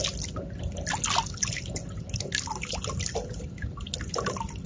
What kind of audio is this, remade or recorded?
recorded